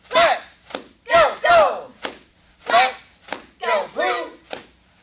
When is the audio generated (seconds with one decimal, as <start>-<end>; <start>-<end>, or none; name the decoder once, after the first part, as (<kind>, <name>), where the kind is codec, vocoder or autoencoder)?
none